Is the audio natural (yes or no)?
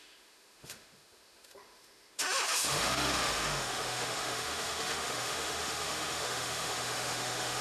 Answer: no